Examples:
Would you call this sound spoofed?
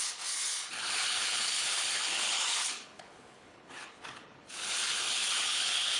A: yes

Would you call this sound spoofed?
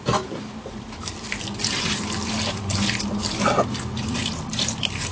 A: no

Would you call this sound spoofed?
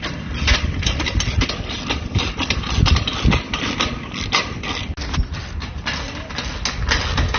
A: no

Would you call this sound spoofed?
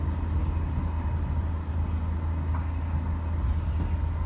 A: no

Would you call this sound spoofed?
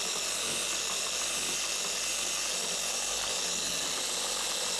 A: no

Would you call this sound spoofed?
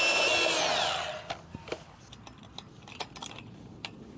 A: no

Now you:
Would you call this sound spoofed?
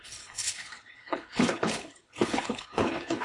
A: yes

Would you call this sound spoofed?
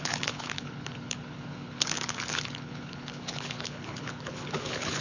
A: yes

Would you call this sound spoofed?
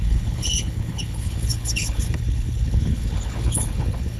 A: yes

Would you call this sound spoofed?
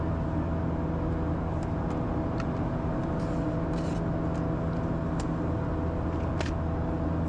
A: no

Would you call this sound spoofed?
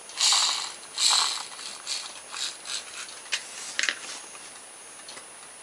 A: no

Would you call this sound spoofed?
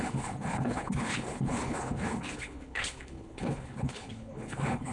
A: yes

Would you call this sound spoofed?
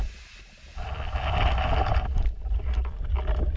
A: no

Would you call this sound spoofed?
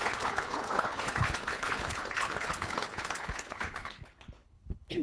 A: yes